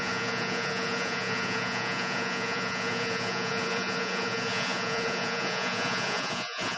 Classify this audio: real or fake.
fake